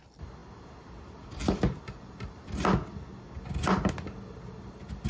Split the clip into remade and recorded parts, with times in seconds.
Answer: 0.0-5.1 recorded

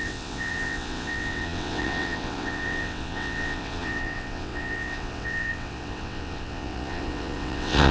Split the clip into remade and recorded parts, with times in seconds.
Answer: 0.0-7.9 remade

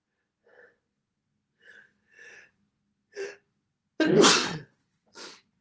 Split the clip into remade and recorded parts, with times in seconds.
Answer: 0.0-4.4 recorded; 4.4-5.6 remade